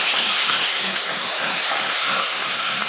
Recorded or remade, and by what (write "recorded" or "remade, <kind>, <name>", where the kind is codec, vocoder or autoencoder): remade, codec, SNAC